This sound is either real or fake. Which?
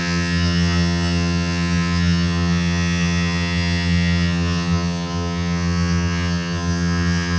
fake